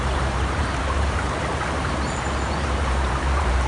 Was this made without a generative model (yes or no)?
no